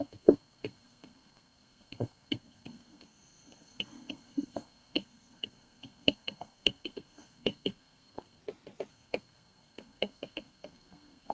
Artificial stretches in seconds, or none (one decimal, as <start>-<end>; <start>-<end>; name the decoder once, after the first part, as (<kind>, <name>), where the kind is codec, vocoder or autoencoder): 0.0-8.4 (codec, SNAC); 8.9-11.3